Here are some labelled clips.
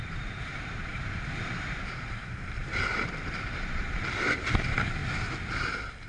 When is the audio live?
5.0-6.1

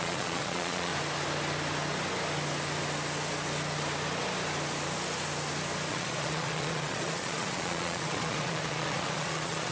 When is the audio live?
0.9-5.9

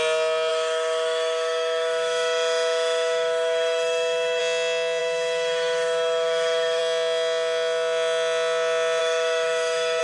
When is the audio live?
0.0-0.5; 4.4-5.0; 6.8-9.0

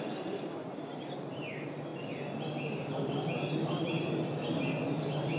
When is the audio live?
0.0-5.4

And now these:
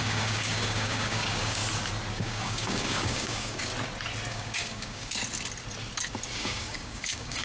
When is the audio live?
1.6-2.1; 3.7-4.3; 5.2-6.3

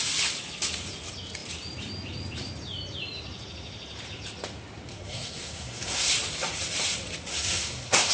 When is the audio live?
0.0-4.9; 6.1-7.3

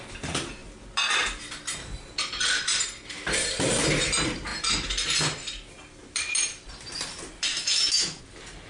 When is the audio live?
0.0-7.5; 8.2-8.7